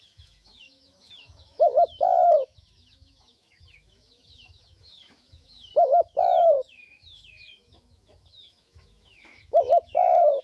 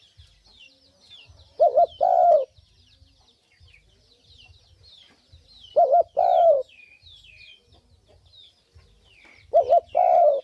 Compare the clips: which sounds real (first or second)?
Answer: second